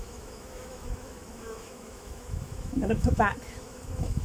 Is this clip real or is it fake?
fake